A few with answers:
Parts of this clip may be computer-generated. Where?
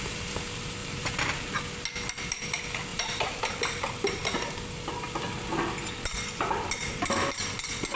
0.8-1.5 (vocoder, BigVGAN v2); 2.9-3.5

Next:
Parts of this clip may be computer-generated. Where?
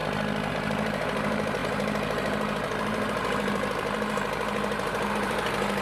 0.5-5.8 (vocoder, BigVGAN v2)